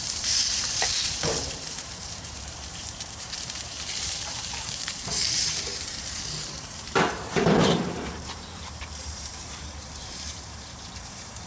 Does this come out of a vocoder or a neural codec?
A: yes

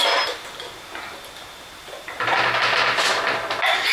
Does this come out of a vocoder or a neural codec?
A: no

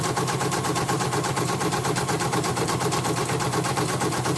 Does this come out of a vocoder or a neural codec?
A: yes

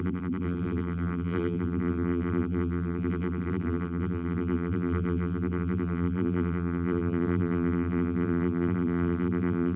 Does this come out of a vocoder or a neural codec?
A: yes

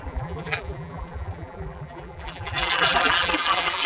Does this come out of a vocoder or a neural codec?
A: yes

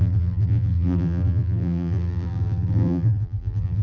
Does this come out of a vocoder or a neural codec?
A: yes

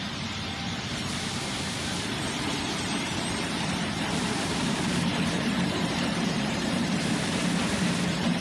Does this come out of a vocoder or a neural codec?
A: yes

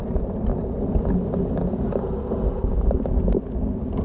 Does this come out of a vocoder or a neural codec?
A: no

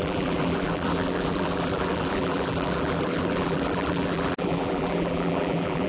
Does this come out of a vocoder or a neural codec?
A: yes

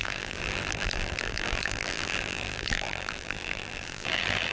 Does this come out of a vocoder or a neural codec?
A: yes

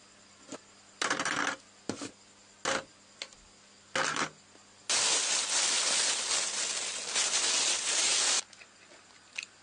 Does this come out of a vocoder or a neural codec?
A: no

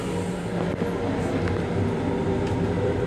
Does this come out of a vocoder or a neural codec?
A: no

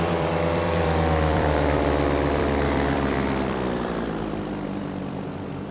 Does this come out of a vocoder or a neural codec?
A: yes